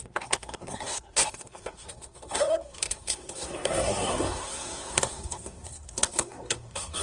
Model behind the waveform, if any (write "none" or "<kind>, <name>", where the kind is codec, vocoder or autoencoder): codec, SNAC